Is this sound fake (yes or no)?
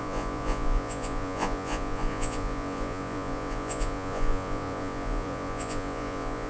yes